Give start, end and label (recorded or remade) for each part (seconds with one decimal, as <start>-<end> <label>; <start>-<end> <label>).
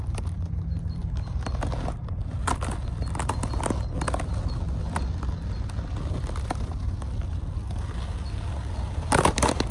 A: 0.0-9.7 recorded